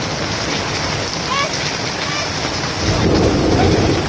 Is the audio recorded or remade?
recorded